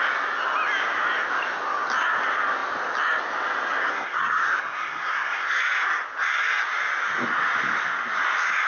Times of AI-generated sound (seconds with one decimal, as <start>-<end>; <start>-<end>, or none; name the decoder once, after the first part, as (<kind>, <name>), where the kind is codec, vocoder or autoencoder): 3.8-5.6 (codec, SNAC)